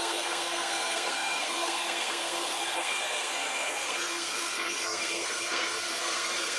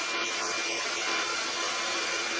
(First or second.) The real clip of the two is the second